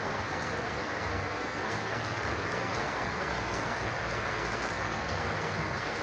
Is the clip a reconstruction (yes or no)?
yes